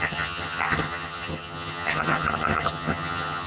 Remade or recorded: remade